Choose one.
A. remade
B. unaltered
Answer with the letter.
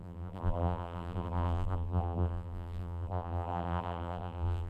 A